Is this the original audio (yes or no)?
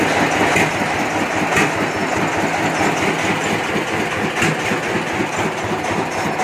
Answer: yes